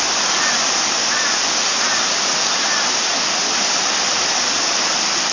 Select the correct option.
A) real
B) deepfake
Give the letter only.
A